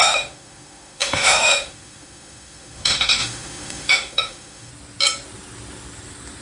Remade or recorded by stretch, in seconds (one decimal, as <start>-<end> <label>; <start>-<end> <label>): 0.0-4.7 remade; 4.7-6.4 recorded